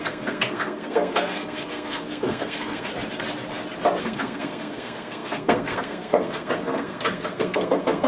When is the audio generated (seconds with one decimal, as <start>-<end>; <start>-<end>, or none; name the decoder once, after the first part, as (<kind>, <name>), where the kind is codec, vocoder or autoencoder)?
0.0-2.9 (codec, SNAC); 4.0-8.1